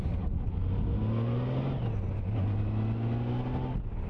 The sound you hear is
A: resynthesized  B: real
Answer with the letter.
B